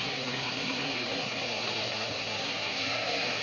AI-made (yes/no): yes